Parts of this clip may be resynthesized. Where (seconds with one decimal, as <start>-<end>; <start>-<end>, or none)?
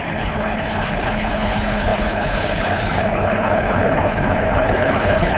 0.0-5.4